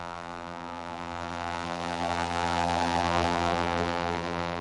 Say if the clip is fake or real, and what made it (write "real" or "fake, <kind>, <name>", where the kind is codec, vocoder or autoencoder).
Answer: fake, vocoder, BigVGAN v2